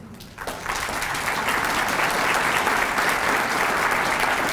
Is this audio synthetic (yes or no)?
no